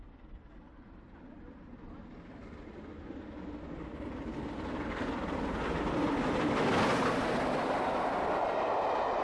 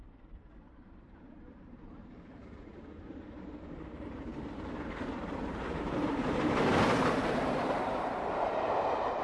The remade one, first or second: second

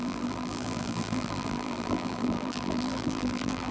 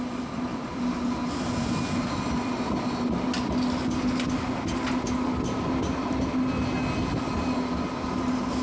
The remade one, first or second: first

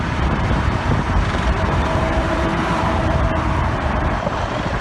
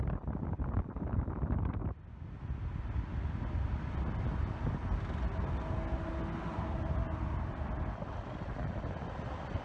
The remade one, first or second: first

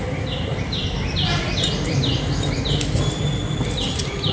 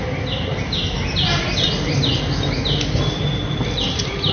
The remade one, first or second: first